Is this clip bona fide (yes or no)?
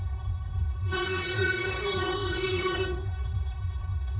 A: no